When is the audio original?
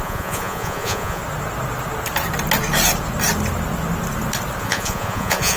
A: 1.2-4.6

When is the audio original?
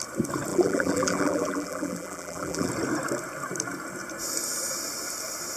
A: 0.0-0.5; 2.7-5.6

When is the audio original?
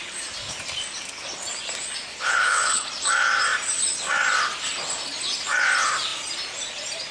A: 0.0-2.1; 2.9-7.1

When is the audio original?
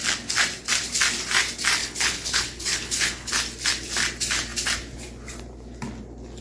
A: 0.0-1.8; 3.3-6.4